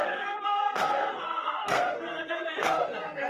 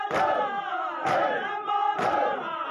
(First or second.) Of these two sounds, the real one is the second